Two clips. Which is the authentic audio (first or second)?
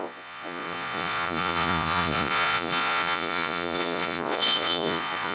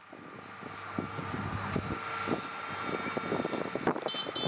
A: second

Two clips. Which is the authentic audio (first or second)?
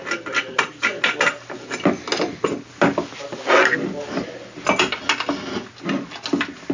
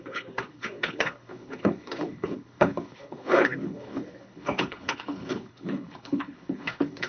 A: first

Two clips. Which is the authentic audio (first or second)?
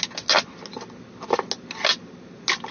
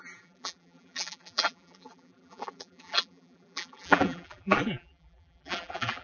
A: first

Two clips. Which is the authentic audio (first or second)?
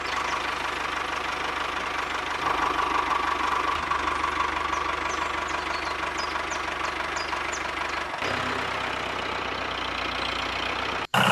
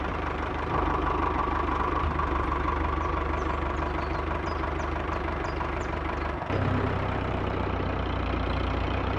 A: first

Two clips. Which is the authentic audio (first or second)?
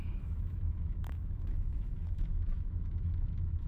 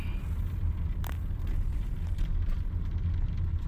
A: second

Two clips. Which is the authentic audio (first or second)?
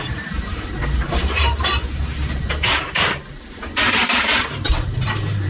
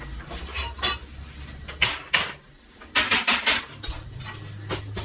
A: second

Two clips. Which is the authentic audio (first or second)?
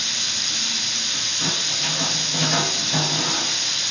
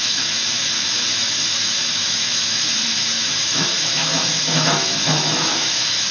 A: first